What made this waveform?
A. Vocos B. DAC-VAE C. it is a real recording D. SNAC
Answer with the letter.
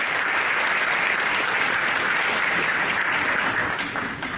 C